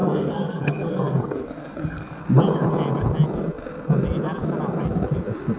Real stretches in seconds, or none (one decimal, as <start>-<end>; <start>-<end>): 2.2-5.6